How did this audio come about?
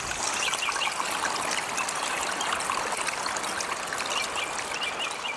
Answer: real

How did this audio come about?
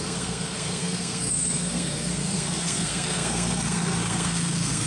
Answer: fake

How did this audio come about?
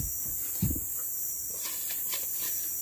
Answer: real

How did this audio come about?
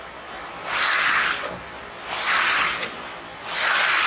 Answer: real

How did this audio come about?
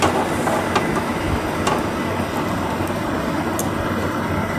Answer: real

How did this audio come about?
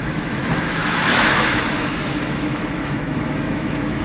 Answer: fake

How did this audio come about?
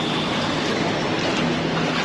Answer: real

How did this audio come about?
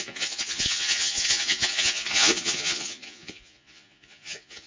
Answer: fake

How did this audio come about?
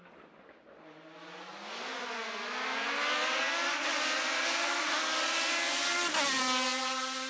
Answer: real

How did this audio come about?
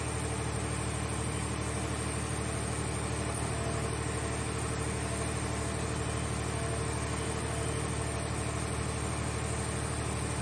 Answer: real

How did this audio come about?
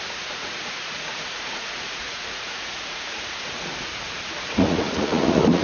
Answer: fake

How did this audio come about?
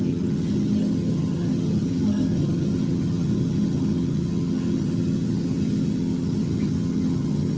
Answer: fake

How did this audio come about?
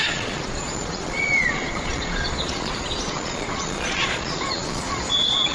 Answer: fake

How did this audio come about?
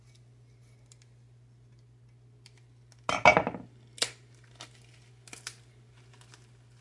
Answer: real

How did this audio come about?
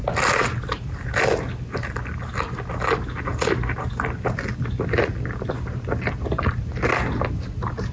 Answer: real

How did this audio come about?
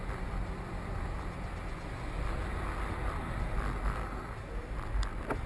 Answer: real